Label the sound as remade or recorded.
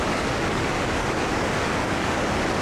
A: remade